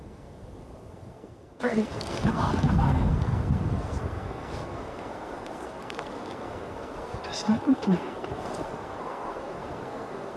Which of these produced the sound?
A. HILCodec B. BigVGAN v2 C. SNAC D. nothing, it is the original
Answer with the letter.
C